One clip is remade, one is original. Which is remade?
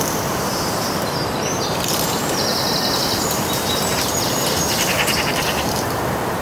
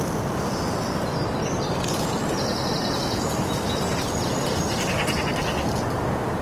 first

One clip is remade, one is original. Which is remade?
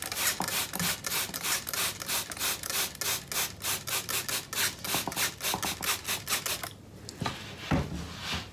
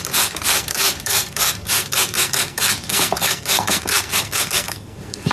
second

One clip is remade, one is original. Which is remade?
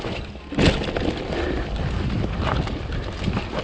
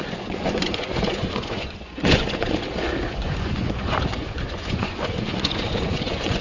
second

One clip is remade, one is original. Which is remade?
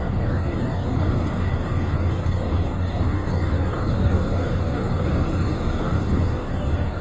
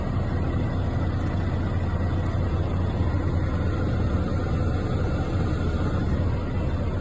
first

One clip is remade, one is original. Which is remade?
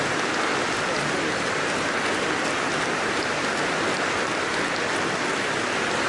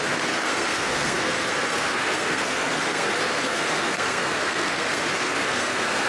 second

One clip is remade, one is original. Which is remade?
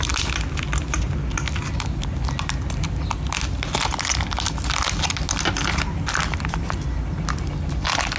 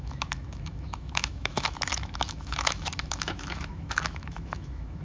second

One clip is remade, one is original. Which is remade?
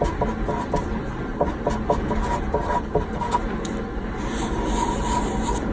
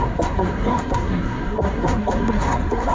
second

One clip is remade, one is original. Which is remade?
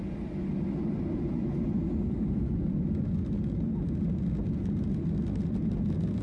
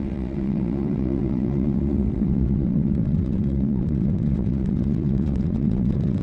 second